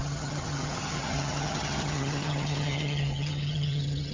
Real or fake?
fake